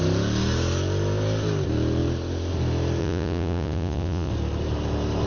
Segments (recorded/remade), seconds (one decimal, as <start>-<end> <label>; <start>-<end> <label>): 0.0-3.0 recorded; 3.0-4.3 remade; 4.3-5.3 recorded